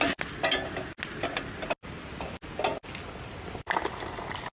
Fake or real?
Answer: real